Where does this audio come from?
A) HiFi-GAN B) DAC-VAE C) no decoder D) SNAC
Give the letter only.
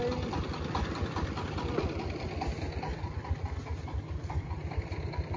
C